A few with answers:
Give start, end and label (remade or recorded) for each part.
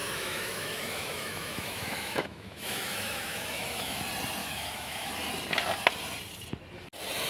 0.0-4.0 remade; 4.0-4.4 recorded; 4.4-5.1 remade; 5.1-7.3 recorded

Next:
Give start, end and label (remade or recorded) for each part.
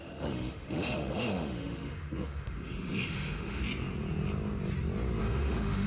0.0-3.6 remade; 3.6-5.2 recorded; 5.2-5.9 remade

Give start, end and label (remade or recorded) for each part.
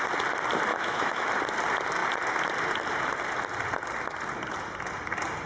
0.0-0.7 recorded; 0.7-1.3 remade; 1.3-5.5 recorded